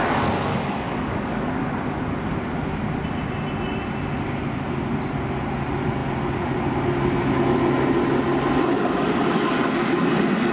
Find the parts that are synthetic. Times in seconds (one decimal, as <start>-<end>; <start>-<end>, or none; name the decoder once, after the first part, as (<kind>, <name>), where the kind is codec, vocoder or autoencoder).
0.5-1.4 (codec, DAC); 8.7-9.4

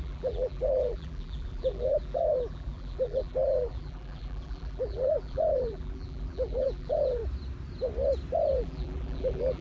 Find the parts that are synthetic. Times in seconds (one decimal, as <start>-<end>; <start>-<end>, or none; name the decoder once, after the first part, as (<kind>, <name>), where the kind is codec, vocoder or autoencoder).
0.0-7.2 (vocoder, BigVGAN v2); 8.6-9.6

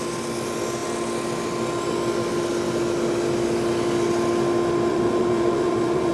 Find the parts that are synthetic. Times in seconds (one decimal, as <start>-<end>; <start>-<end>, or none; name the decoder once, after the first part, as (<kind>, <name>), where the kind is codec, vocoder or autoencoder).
4.9-6.1 (vocoder, Vocos)

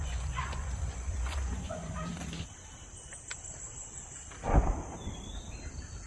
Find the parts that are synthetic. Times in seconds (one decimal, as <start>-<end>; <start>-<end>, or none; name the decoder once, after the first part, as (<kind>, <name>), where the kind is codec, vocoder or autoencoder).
0.0-2.1 (vocoder, Vocos)